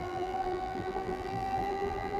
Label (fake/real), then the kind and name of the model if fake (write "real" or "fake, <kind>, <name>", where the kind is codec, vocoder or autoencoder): fake, vocoder, BigVGAN v2